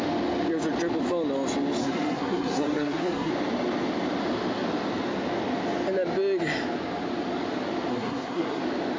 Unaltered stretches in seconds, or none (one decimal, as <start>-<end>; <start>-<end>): 0.0-1.8; 3.3-7.9; 8.6-9.0